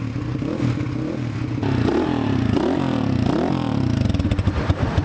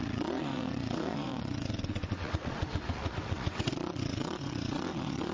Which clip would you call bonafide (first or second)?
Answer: first